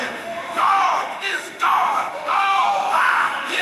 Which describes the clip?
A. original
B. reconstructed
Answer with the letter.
B